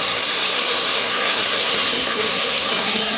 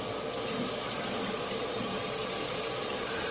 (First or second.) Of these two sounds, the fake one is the first